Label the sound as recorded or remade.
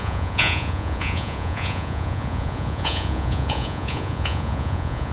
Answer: remade